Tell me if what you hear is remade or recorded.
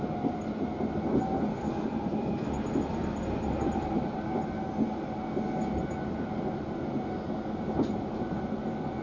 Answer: recorded